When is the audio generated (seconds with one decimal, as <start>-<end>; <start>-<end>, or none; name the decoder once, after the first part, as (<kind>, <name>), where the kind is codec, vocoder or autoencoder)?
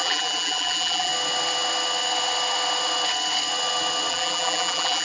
0.0-1.1 (vocoder, BigVGAN v2); 4.1-5.0